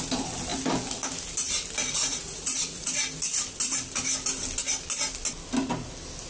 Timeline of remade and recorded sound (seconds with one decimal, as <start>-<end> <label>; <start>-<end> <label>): 0.0-1.8 recorded; 1.8-2.9 remade; 2.9-6.3 recorded